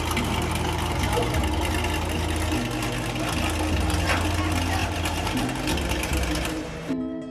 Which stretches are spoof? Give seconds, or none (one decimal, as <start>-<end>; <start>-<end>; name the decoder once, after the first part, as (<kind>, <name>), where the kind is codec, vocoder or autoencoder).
4.8-7.3 (vocoder, BigVGAN v2)